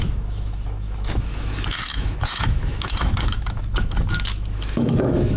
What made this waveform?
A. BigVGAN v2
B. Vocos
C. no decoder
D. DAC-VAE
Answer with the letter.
D